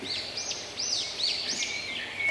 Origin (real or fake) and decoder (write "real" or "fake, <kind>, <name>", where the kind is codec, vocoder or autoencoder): real